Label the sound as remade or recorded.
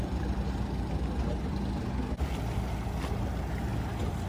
recorded